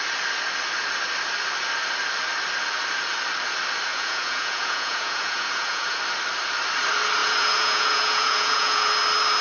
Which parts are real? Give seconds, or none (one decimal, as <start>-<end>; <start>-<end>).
0.0-3.9; 6.0-7.2; 8.9-9.4